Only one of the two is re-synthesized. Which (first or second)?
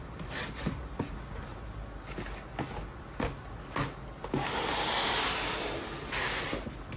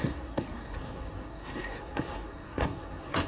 second